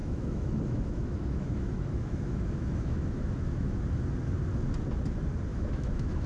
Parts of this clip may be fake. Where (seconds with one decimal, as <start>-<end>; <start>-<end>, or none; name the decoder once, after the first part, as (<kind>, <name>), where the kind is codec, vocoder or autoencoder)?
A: 0.0-3.8 (autoencoder, DAC-VAE); 5.5-6.3